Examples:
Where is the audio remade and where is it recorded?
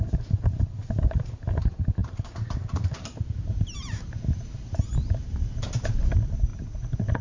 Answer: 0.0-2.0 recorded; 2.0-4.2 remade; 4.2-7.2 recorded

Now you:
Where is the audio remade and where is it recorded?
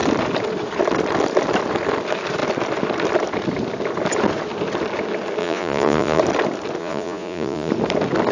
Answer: 0.0-5.4 recorded; 5.4-6.2 remade; 6.2-6.8 recorded; 6.8-7.7 remade; 7.7-8.3 recorded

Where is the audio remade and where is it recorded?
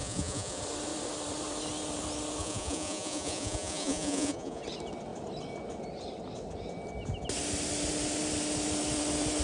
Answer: 0.0-0.6 remade; 0.6-2.4 recorded; 2.4-4.6 remade; 4.6-9.4 recorded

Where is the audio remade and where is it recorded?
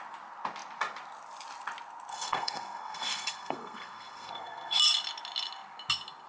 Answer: 0.0-2.1 recorded; 2.1-4.8 remade; 4.8-6.3 recorded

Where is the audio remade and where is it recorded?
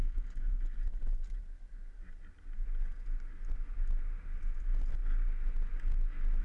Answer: 0.0-0.6 remade; 0.6-6.4 recorded